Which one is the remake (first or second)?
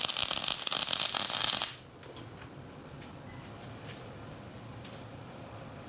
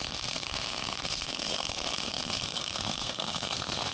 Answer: second